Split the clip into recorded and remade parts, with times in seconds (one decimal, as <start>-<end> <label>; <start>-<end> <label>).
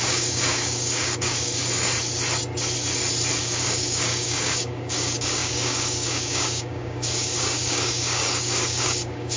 0.0-1.6 remade; 1.6-3.4 recorded; 3.4-9.4 remade